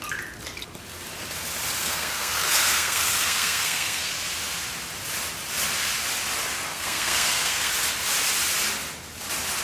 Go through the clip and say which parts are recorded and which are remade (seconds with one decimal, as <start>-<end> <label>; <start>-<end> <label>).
0.0-1.8 recorded; 1.8-4.1 remade; 4.1-6.7 recorded; 6.7-7.7 remade; 7.7-9.6 recorded